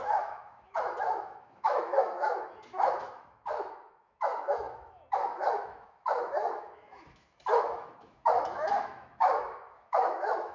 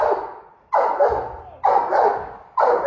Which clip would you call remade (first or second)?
first